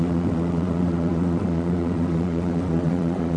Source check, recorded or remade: remade